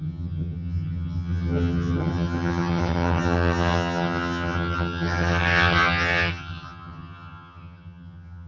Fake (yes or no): yes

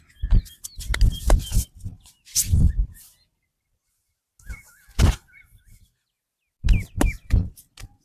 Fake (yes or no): no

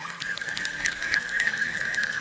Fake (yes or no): yes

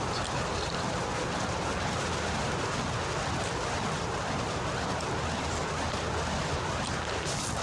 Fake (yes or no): no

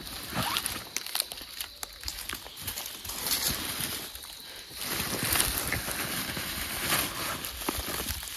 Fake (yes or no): no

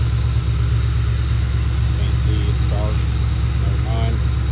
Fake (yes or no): no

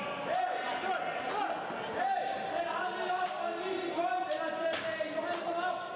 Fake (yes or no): no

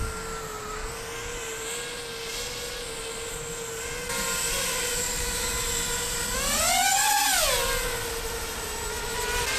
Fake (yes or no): no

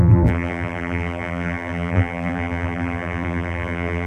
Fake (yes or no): yes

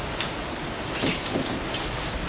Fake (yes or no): no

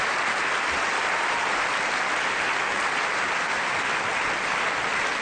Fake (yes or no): no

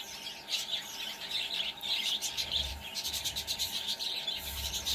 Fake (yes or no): yes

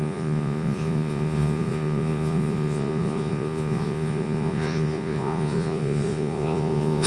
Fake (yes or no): yes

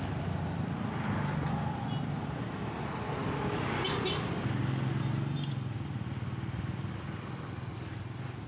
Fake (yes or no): no